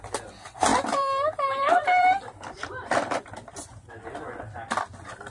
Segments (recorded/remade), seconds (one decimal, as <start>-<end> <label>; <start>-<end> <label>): 0.0-0.7 recorded; 0.7-3.9 remade; 3.9-5.3 recorded